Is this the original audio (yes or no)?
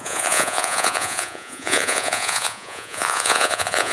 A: no